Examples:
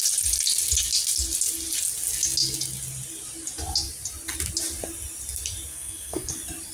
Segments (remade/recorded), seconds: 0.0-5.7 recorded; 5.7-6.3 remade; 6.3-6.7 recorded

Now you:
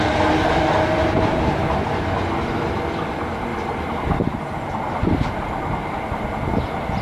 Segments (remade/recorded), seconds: 0.0-3.5 recorded; 3.5-5.3 remade; 5.3-7.0 recorded